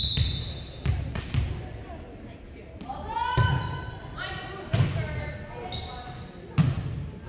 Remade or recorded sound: recorded